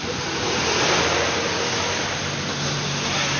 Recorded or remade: recorded